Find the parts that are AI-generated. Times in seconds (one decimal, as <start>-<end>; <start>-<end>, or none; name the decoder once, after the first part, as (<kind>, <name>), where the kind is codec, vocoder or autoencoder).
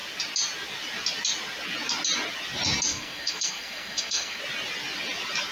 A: 2.9-4.4 (codec, SNAC)